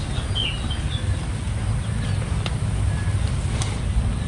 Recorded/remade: recorded